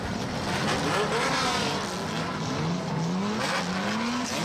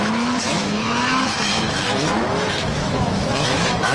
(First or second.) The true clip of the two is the first